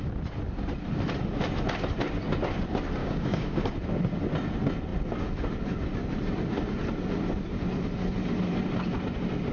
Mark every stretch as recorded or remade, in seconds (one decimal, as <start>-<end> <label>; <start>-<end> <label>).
0.0-3.0 recorded; 3.0-3.7 remade; 3.7-9.5 recorded